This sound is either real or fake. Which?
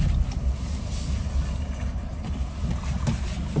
real